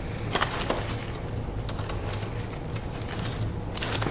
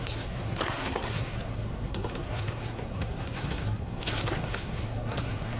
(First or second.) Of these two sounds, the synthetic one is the second